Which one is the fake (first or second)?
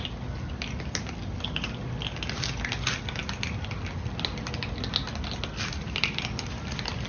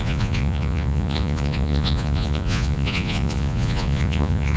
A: second